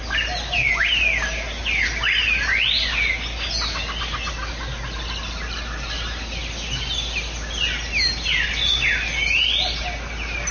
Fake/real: real